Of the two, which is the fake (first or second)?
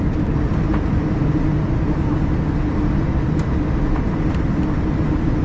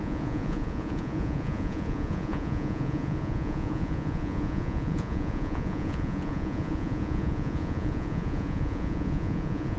second